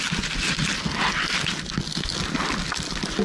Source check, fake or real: real